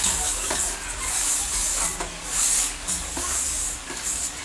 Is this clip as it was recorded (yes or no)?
no